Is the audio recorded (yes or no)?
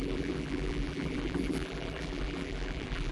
no